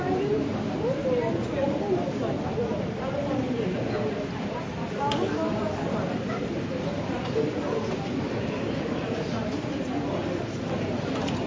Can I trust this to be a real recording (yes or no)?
no